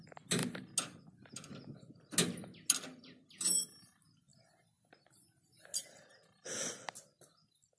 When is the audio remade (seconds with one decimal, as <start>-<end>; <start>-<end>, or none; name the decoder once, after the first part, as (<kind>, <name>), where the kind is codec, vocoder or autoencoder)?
none